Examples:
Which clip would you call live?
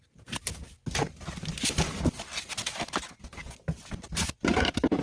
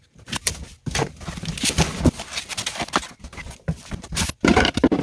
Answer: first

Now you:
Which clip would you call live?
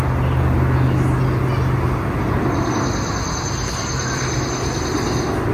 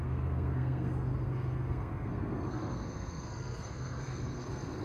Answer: first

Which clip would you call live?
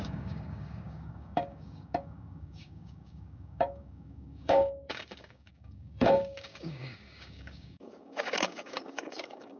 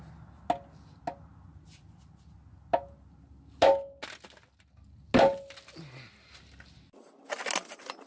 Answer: second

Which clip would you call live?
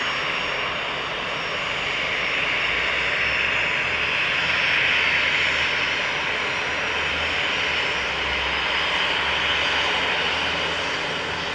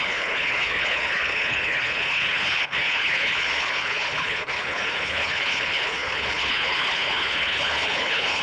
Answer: first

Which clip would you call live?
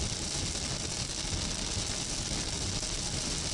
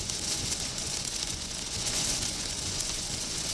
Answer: first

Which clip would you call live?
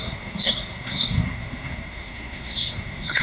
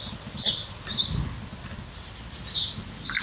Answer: second